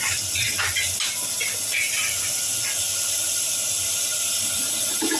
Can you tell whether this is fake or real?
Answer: real